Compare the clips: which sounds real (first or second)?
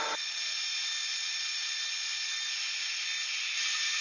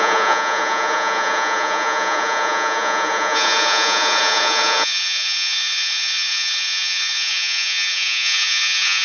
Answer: first